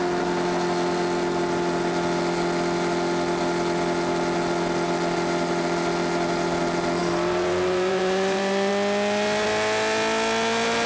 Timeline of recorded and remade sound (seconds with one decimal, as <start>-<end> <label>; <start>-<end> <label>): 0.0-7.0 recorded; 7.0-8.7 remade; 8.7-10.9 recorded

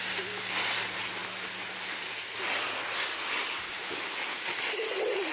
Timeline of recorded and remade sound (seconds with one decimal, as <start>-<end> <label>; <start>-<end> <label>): 0.0-1.2 recorded; 1.2-2.5 remade; 2.5-3.8 recorded; 3.8-4.7 remade; 4.7-5.3 recorded

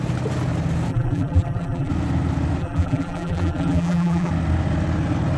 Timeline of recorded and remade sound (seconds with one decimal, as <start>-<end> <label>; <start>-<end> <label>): 0.0-0.9 recorded; 0.9-1.9 remade; 1.9-2.6 recorded; 2.6-4.3 remade; 4.3-5.4 recorded